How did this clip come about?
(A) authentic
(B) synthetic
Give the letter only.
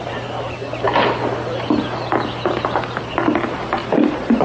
A